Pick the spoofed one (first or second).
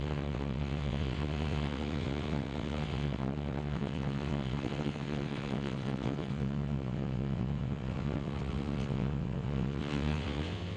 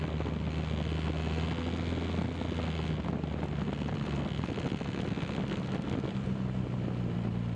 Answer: first